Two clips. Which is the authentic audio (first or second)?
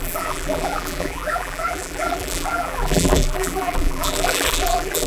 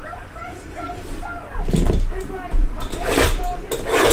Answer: second